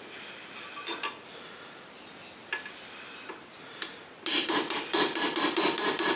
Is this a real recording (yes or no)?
yes